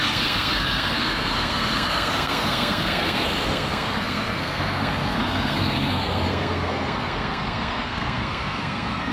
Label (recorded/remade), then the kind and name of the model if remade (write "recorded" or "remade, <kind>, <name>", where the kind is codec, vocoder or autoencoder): remade, codec, SNAC